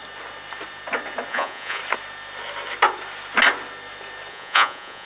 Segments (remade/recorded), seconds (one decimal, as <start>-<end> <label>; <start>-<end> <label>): 0.0-1.3 recorded; 1.3-1.8 remade; 1.8-4.3 recorded; 4.3-5.1 remade